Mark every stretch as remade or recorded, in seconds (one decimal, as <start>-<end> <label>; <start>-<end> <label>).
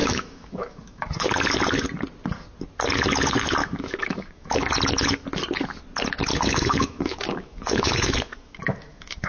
0.0-1.3 remade; 1.3-3.6 recorded; 3.6-4.7 remade; 4.7-6.3 recorded; 6.3-9.3 remade